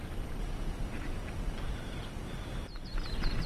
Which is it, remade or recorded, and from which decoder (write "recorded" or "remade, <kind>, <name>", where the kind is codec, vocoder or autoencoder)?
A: recorded